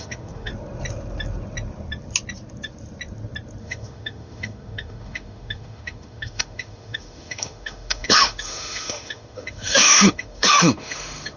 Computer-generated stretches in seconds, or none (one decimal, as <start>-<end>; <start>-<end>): 0.0-0.5; 3.6-11.4

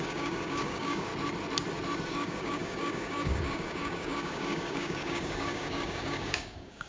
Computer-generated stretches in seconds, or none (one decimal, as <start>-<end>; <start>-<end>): 0.0-1.1; 2.1-6.9

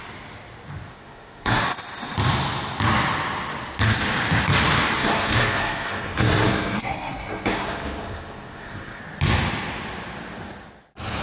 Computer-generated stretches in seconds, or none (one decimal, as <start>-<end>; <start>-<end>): 0.9-1.6; 5.0-9.0

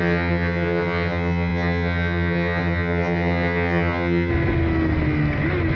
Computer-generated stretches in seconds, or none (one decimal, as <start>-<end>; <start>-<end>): 0.0-4.3